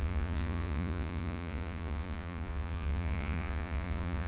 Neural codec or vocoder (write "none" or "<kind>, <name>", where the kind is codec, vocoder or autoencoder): vocoder, Vocos